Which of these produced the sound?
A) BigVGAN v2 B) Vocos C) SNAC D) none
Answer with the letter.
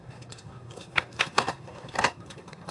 C